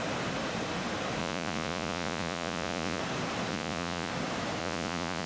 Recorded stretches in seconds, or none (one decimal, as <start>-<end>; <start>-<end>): 0.0-1.2; 3.0-3.5; 4.1-4.6